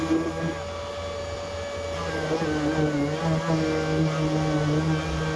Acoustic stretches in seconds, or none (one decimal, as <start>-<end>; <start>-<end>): 0.0-5.4